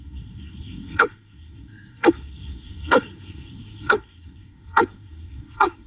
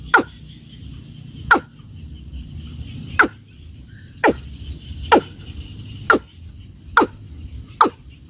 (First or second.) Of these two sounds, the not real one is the first